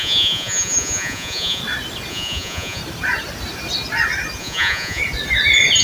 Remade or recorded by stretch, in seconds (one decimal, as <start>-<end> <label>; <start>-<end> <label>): 0.0-1.6 remade; 1.6-2.1 recorded; 2.1-2.8 remade; 2.8-4.4 recorded; 4.4-5.0 remade; 5.0-5.8 recorded